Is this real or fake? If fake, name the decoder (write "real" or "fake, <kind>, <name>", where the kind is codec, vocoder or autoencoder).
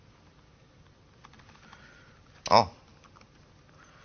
real